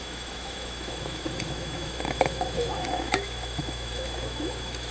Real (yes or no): no